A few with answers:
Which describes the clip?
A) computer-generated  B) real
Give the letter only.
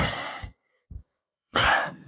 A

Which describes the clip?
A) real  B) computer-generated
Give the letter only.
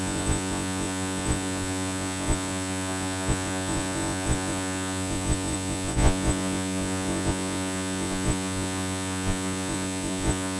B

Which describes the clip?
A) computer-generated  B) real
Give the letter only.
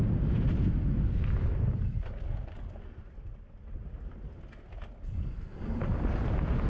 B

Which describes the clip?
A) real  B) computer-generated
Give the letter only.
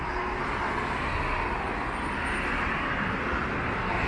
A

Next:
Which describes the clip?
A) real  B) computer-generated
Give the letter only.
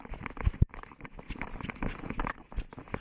A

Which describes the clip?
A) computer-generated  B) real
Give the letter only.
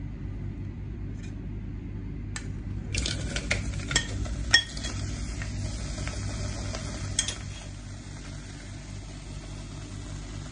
B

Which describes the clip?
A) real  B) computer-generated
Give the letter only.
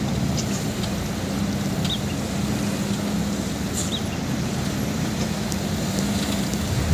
A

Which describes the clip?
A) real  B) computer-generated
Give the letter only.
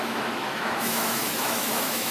B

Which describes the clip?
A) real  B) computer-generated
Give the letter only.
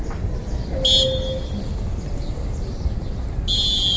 A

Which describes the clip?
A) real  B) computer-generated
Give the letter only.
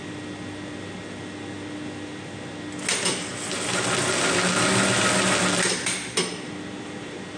A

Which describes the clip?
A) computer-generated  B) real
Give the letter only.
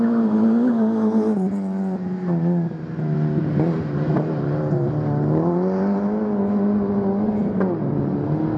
B